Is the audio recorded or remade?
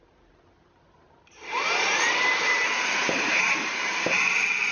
remade